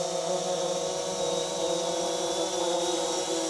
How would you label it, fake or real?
fake